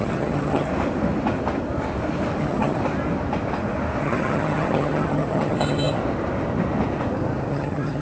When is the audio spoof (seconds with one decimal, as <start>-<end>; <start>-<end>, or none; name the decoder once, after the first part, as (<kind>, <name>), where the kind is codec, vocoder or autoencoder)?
0.0-0.7 (vocoder, HiFi-GAN); 2.4-2.8; 4.0-6.0; 7.5-8.0